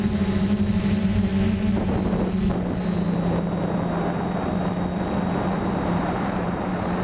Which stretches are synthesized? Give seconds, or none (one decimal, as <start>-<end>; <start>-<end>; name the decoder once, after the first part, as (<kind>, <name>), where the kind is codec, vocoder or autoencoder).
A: 0.0-1.3 (vocoder, BigVGAN v2); 5.5-7.0